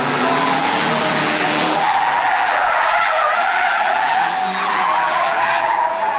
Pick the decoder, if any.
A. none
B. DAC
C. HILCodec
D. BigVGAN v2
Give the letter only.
D